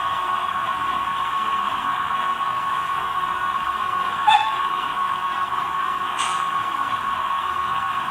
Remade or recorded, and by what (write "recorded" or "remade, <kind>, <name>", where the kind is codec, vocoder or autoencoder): remade, codec, SNAC